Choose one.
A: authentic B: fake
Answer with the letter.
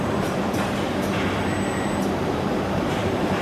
B